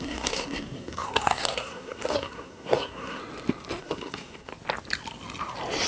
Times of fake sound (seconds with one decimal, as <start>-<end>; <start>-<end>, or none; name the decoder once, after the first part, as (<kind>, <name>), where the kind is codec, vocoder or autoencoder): 0.0-3.2 (codec, SNAC); 3.8-4.5